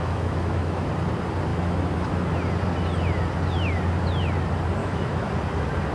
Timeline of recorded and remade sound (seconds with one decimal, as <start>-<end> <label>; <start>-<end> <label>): 0.0-0.9 remade; 0.9-1.5 recorded; 1.5-2.3 remade; 2.3-4.8 recorded; 4.8-5.3 remade; 5.3-5.9 recorded